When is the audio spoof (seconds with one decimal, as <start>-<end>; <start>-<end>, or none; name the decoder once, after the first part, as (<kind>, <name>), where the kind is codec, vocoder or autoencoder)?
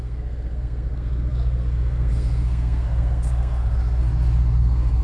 0.0-4.1 (codec, SNAC); 4.6-5.0